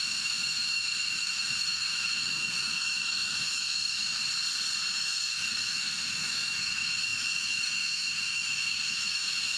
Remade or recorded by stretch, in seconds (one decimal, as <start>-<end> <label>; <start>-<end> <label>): 0.0-4.2 remade; 4.2-4.9 recorded; 4.9-9.6 remade